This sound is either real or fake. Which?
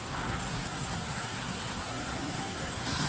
fake